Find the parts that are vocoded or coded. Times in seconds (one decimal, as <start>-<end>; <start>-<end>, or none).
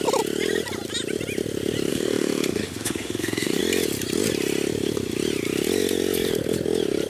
1.9-3.6